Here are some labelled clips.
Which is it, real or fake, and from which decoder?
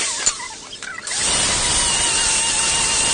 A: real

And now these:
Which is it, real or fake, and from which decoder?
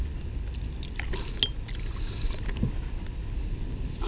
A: real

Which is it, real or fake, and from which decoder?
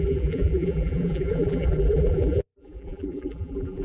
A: fake, vocoder, BigVGAN v2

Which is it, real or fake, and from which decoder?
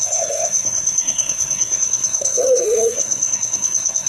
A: fake, codec, SNAC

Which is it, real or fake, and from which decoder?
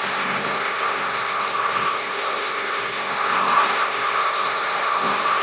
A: fake, codec, SNAC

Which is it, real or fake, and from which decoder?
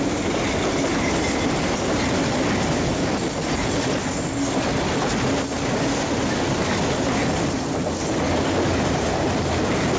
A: real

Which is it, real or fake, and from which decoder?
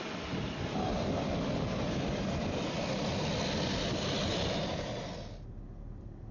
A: real